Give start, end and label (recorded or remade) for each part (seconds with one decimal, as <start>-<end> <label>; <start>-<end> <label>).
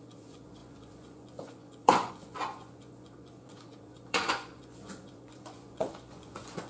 0.0-6.7 remade